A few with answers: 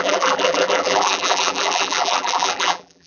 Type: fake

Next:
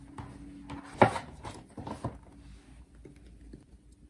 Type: real